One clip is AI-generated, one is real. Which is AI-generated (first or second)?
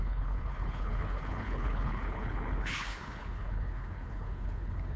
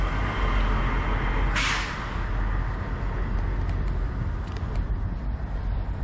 first